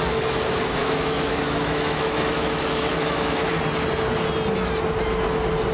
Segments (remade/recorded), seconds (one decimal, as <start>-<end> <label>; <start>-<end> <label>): 0.0-0.8 recorded; 0.8-3.5 remade; 3.5-5.7 recorded